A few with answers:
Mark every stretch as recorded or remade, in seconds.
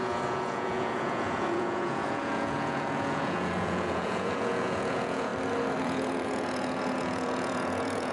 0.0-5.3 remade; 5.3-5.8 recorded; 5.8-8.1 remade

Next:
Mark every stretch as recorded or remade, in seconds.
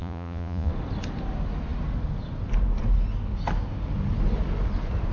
0.0-0.7 remade; 0.7-5.1 recorded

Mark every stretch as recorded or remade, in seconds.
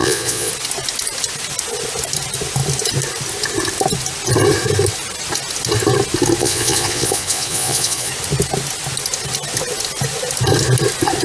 0.0-0.5 remade; 0.5-6.4 recorded; 6.4-8.1 remade; 8.1-11.2 recorded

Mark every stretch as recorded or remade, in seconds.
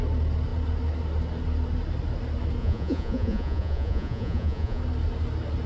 0.0-2.6 recorded; 2.6-4.8 remade; 4.8-5.7 recorded